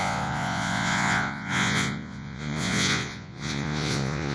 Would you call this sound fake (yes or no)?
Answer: yes